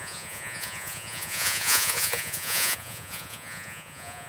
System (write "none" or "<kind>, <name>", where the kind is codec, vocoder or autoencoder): vocoder, Vocos